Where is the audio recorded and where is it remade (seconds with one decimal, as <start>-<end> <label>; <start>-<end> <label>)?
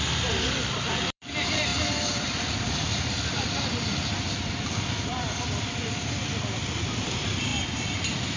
0.0-8.4 remade